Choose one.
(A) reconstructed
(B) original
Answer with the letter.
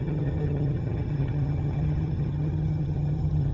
A